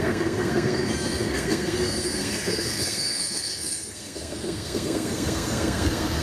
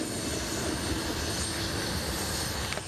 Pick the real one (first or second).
second